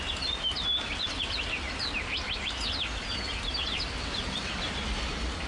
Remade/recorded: recorded